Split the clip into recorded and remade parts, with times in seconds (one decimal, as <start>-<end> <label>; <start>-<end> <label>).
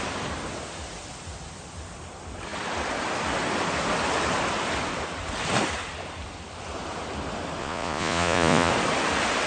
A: 0.0-7.6 recorded; 7.6-8.7 remade; 8.7-9.5 recorded